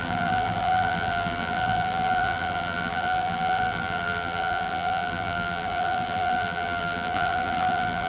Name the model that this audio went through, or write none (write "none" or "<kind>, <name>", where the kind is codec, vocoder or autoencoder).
vocoder, BigVGAN v2